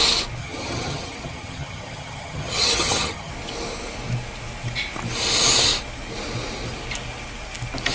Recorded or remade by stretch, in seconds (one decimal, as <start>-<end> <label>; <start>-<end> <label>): 0.0-0.4 recorded; 0.4-3.3 remade; 3.3-7.9 recorded

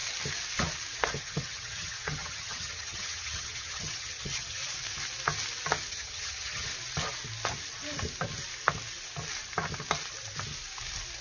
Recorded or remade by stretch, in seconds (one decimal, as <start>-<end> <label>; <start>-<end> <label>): 0.0-1.2 recorded; 1.2-4.6 remade; 4.6-5.9 recorded; 5.9-6.7 remade; 6.7-11.2 recorded

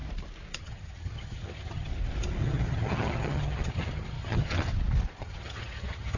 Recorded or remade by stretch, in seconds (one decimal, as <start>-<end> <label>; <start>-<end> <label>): 0.0-0.6 recorded; 0.6-1.9 remade; 1.9-2.4 recorded; 2.4-4.7 remade; 4.7-5.2 recorded; 5.2-6.2 remade